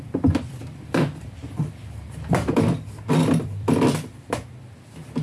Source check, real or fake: fake